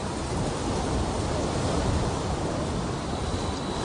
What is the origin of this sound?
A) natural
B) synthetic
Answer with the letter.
A